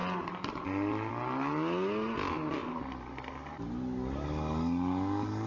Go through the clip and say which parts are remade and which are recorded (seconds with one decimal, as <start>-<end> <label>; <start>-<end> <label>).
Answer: 0.0-5.5 recorded